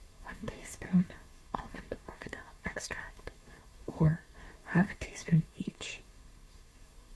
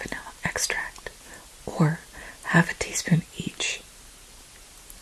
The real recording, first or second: second